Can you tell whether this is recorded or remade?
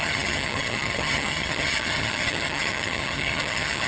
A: remade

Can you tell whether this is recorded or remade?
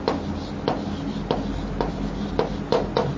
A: recorded